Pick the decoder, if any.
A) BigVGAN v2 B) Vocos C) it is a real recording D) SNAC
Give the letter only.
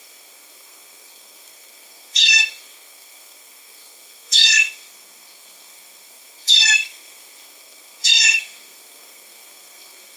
D